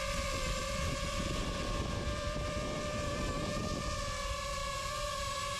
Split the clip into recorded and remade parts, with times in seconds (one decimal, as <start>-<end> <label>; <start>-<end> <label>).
0.0-5.6 remade